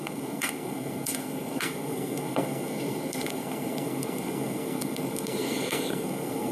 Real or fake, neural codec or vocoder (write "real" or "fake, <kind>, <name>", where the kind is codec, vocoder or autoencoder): fake, codec, SNAC